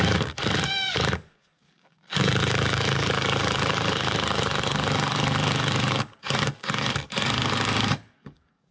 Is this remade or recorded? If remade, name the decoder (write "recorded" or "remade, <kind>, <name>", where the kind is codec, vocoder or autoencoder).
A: remade, codec, DAC